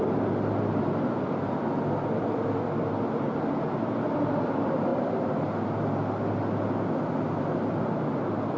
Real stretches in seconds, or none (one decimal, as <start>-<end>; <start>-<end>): 0.0-4.9; 5.5-8.6